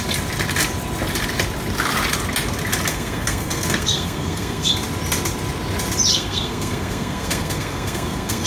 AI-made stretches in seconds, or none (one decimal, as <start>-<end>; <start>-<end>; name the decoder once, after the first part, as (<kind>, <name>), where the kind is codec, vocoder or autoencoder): 2.9-4.7 (codec, SNAC); 6.1-8.5